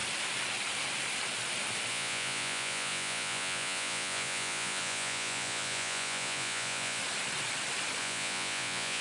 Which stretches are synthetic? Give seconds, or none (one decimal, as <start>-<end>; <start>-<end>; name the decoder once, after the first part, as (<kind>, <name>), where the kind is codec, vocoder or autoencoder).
1.9-7.0 (vocoder, Vocos); 8.0-9.0